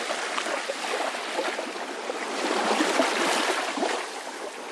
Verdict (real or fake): real